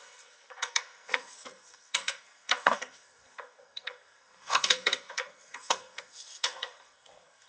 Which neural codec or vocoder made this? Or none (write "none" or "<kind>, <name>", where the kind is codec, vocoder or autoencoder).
codec, SNAC